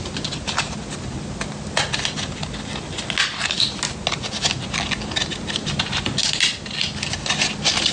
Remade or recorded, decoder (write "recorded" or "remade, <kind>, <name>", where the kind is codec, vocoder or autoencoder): recorded